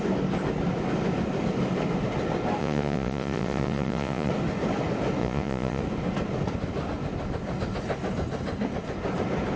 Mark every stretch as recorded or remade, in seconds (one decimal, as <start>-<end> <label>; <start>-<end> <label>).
0.0-2.6 recorded; 2.6-4.3 remade; 4.3-5.2 recorded; 5.2-5.8 remade; 5.8-9.6 recorded

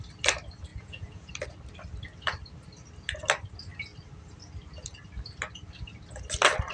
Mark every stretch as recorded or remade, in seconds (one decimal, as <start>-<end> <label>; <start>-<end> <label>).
0.0-0.7 recorded; 0.7-1.3 remade; 1.3-6.7 recorded

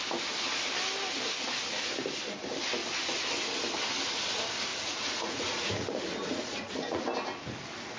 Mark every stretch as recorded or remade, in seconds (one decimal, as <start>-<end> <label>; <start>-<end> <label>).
0.0-4.7 recorded; 4.7-7.0 remade; 7.0-8.0 recorded

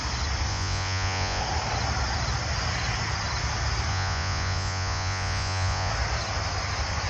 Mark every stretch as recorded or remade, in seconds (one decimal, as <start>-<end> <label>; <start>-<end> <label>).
0.0-0.5 recorded; 0.5-1.4 remade; 1.4-3.9 recorded; 3.9-5.9 remade; 5.9-7.1 recorded

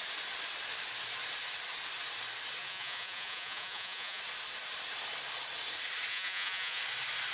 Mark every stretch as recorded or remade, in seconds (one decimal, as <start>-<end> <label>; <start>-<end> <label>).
0.0-2.6 recorded; 2.6-4.2 remade; 4.2-6.1 recorded; 6.1-6.8 remade; 6.8-7.3 recorded

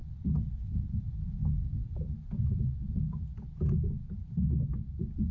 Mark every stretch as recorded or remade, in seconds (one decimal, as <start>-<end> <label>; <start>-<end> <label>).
0.0-5.3 recorded